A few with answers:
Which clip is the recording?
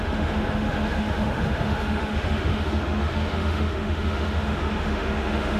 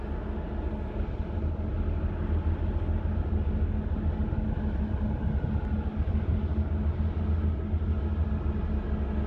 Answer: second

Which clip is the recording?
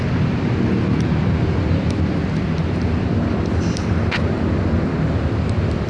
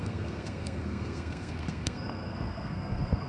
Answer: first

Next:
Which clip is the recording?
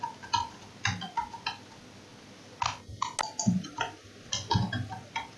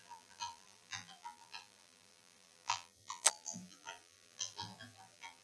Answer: first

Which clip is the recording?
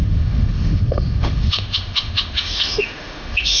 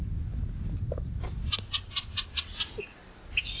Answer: second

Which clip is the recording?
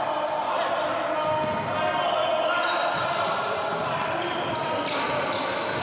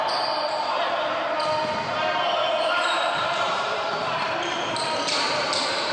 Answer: first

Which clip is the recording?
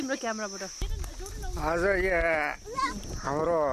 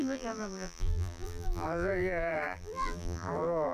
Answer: first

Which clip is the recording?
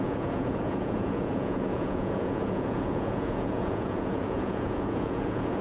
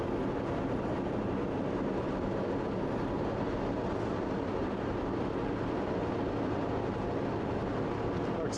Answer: second